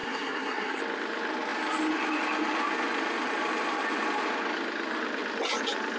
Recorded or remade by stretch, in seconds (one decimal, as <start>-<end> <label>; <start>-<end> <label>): 0.0-0.8 remade; 0.8-6.0 recorded

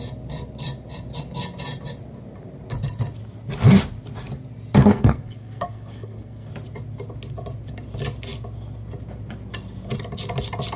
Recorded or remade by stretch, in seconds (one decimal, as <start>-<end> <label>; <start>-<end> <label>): 0.0-4.8 recorded; 4.8-6.5 remade; 6.5-10.8 recorded

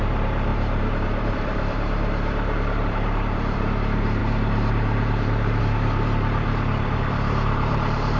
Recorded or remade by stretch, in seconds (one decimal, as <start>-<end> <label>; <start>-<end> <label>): 0.0-8.2 remade

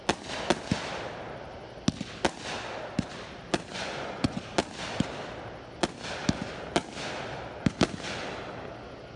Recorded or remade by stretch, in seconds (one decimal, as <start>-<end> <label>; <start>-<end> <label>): 0.0-3.7 recorded; 3.7-4.4 remade; 4.4-9.2 recorded

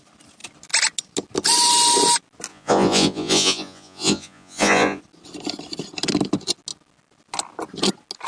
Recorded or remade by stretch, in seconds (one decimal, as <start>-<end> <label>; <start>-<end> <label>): 0.0-2.5 recorded; 2.5-5.0 remade; 5.0-8.3 recorded

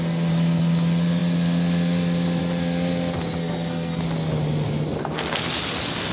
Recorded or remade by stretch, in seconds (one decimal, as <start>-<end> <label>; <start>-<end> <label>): 0.0-3.4 recorded; 3.4-4.0 remade; 4.0-5.0 recorded; 5.0-5.5 remade; 5.5-6.1 recorded

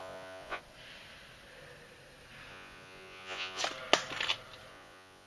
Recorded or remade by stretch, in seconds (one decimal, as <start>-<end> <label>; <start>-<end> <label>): 0.0-0.6 remade; 0.6-2.5 recorded; 2.5-3.6 remade; 3.6-4.7 recorded; 4.7-5.3 remade

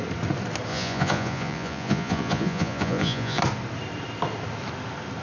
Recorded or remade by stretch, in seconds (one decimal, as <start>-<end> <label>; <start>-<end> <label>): 0.0-0.7 recorded; 0.7-3.4 remade; 3.4-5.2 recorded